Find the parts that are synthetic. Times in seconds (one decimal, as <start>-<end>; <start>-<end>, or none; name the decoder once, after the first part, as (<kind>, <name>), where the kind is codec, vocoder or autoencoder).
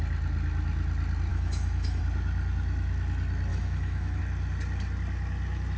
1.3-2.0 (autoencoder, DAC-VAE); 3.5-4.2